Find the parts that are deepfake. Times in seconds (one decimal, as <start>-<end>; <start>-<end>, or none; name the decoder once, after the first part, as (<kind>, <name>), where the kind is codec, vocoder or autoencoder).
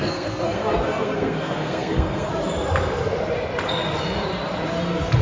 0.0-2.3 (codec, SNAC)